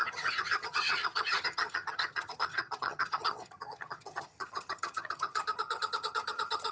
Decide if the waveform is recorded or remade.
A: remade